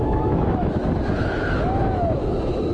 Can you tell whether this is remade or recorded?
remade